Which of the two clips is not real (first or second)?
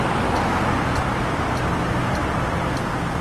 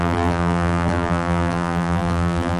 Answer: second